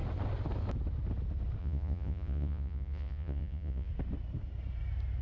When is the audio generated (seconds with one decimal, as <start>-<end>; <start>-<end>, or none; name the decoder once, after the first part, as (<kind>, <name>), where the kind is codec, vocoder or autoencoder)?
1.6-3.9 (vocoder, Vocos)